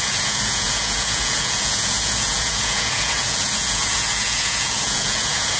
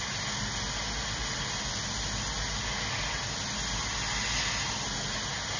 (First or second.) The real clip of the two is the second